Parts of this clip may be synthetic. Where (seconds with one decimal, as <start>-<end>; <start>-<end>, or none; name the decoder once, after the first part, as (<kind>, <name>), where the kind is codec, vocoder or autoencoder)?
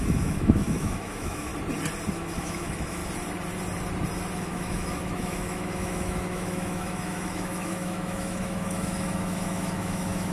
0.0-1.5 (autoencoder, DAC-VAE); 2.1-3.0; 4.4-10.3